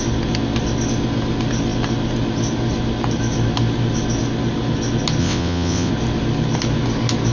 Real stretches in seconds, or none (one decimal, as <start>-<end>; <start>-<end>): 0.0-5.2; 5.9-7.3